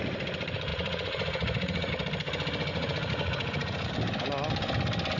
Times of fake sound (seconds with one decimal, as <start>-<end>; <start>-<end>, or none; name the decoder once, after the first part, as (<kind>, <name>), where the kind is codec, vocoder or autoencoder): 0.7-1.9 (vocoder, Vocos); 2.7-3.9